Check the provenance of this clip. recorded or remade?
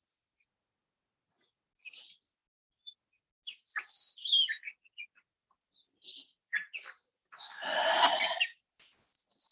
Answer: recorded